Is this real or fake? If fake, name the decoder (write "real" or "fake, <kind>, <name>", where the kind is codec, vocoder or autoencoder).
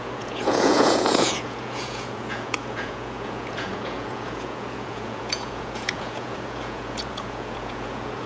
fake, vocoder, Vocos